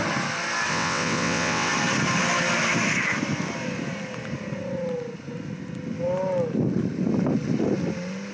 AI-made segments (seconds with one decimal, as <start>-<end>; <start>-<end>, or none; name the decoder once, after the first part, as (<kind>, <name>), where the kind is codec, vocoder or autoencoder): 0.7-1.7 (vocoder, WaveNeXt)